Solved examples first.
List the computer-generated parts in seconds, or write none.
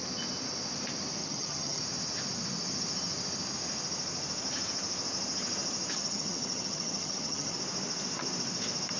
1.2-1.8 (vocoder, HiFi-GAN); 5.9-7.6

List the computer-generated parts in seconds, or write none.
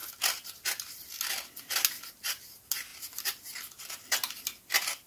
none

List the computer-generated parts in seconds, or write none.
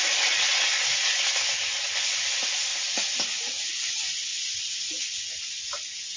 4.3-4.9 (vocoder, Vocos)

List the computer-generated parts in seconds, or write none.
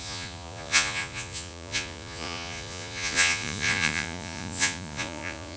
0.0-5.6 (vocoder, Vocos)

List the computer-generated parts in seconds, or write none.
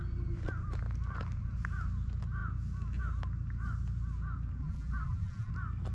4.6-5.5 (vocoder, BigVGAN v2)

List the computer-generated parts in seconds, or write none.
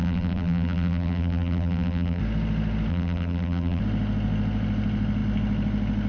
0.0-2.2 (vocoder, BigVGAN v2); 2.9-3.8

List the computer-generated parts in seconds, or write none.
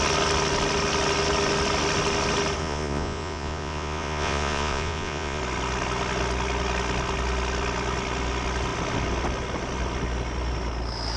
2.6-5.4 (vocoder, Vocos)